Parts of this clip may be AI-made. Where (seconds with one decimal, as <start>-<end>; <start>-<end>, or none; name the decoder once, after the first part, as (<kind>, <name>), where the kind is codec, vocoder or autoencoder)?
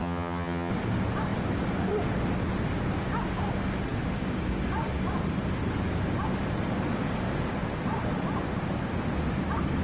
0.0-0.7 (vocoder, HiFi-GAN)